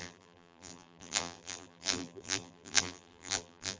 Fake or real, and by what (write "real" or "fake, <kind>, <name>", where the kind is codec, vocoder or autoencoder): fake, vocoder, BigVGAN v2